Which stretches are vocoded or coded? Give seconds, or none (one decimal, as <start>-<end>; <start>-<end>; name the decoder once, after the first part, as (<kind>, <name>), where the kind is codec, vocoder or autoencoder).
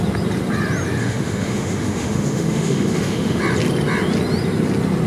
1.0-3.4 (autoencoder, DAC-VAE)